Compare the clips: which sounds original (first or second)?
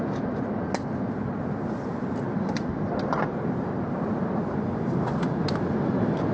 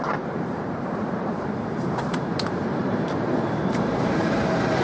first